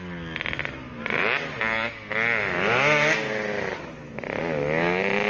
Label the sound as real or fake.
real